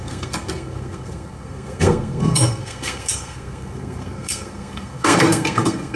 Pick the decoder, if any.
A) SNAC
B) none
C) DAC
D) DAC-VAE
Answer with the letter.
A